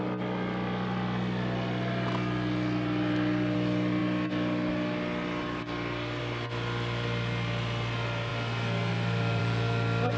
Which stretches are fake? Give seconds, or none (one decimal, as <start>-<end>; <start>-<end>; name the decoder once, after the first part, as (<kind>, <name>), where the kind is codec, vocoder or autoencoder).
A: none